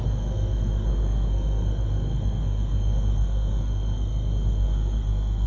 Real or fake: fake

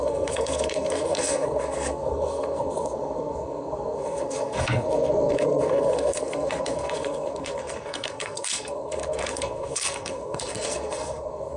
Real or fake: fake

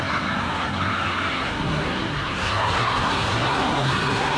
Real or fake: fake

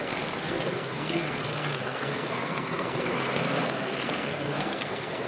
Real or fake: fake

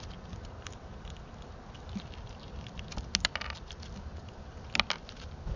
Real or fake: real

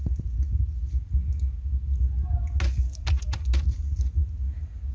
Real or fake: real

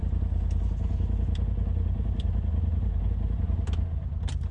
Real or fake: real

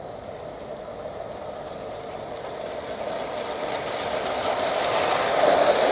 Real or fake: real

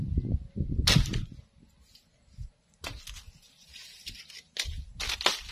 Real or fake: real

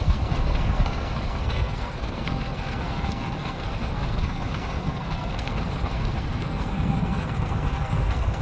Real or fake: fake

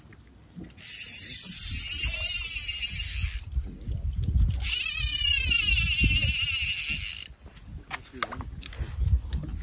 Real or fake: real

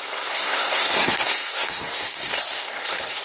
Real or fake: fake